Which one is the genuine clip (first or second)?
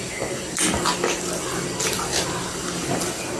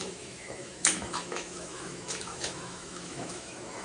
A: first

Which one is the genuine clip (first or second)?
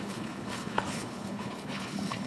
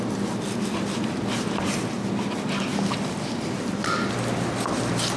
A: second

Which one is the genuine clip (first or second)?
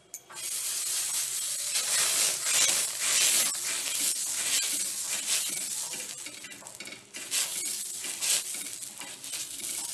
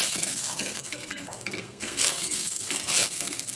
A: first